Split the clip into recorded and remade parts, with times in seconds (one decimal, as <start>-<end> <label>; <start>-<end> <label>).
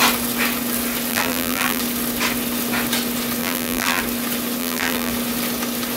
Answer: 0.0-1.1 recorded; 1.1-1.8 remade; 1.8-3.4 recorded; 3.4-4.0 remade; 4.0-4.6 recorded; 4.6-5.1 remade; 5.1-6.0 recorded